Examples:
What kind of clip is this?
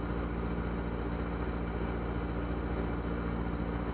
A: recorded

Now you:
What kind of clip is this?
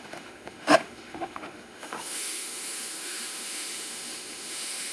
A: remade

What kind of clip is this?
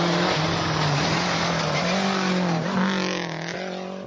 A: recorded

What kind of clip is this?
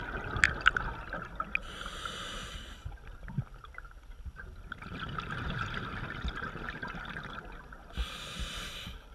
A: recorded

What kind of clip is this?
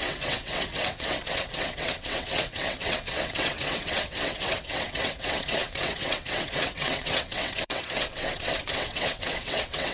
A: remade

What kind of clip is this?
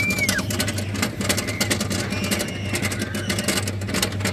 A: recorded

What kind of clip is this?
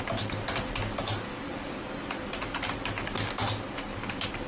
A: recorded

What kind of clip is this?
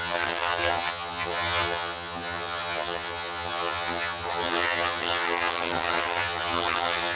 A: remade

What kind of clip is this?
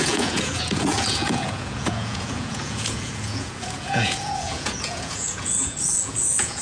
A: remade